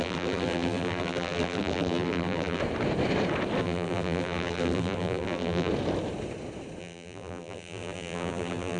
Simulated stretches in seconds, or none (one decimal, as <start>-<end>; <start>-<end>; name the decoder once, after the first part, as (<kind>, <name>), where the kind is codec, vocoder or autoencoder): 0.0-2.6 (vocoder, BigVGAN v2); 3.6-5.7; 6.8-8.8